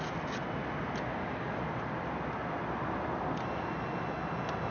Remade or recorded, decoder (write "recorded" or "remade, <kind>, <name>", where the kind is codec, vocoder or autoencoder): recorded